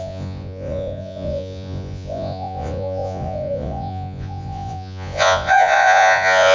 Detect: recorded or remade remade